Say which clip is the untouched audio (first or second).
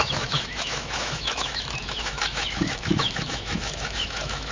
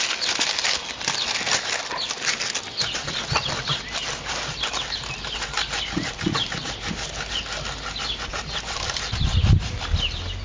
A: second